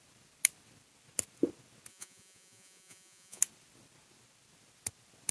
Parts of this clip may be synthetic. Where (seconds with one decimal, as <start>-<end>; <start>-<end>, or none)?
1.9-3.4